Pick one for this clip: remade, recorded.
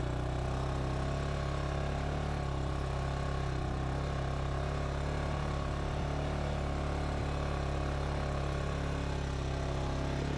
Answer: recorded